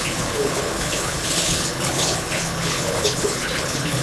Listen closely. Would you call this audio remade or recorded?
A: remade